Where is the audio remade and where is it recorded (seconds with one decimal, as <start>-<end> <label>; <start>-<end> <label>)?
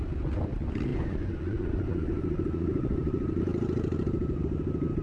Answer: 0.0-0.9 recorded; 0.9-3.4 remade; 3.4-5.0 recorded